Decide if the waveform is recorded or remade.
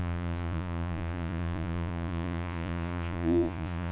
remade